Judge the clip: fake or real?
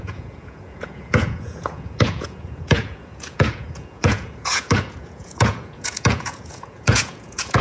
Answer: fake